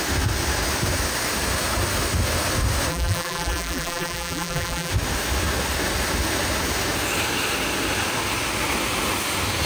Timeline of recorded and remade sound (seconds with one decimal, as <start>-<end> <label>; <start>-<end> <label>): 0.0-2.9 recorded; 2.9-4.9 remade; 4.9-9.7 recorded